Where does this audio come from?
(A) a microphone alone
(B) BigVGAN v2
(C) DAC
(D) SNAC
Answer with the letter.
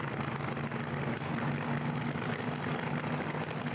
A